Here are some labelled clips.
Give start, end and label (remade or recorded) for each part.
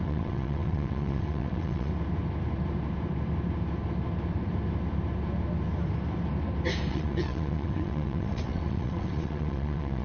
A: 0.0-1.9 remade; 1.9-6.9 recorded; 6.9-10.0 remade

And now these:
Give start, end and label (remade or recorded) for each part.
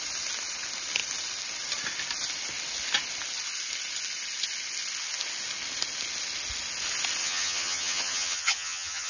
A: 0.0-7.2 recorded; 7.2-9.1 remade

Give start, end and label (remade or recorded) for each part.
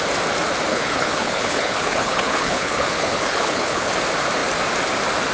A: 0.0-0.7 recorded; 0.7-3.9 remade; 3.9-5.3 recorded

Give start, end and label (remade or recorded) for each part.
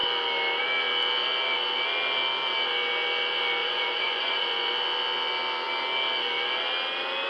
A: 0.0-3.6 recorded; 3.6-4.7 remade; 4.7-7.3 recorded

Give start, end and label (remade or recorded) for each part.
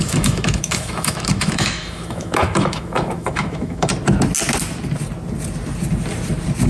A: 0.0-3.9 remade; 3.9-6.7 recorded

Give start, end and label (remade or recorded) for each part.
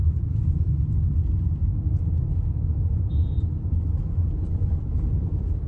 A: 0.0-5.7 remade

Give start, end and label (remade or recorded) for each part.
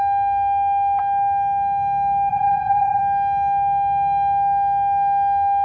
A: 0.0-2.3 recorded; 2.3-3.0 remade; 3.0-5.6 recorded